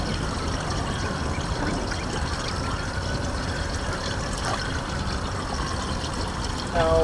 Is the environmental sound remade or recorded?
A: recorded